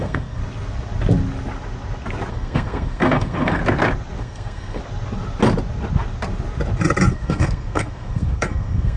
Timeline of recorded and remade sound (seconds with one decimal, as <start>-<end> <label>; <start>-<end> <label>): 0.0-0.4 remade; 0.4-2.3 recorded; 2.3-3.6 remade; 3.6-4.2 recorded; 4.2-4.8 remade; 4.8-7.1 recorded; 7.1-9.0 remade